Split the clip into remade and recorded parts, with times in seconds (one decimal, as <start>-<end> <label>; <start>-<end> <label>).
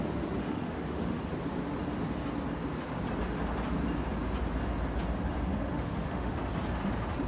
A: 0.0-0.4 recorded; 0.4-1.2 remade; 1.2-5.5 recorded; 5.5-6.3 remade; 6.3-7.3 recorded